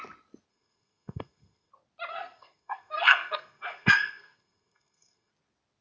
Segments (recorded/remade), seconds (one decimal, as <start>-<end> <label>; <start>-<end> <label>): 0.0-0.5 recorded; 0.5-1.7 remade; 1.7-2.1 recorded; 2.1-5.3 remade; 5.3-5.8 recorded